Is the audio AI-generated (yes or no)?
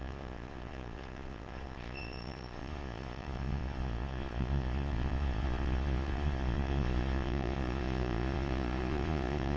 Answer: yes